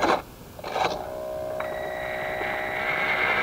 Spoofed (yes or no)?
no